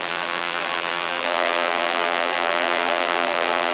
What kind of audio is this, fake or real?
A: fake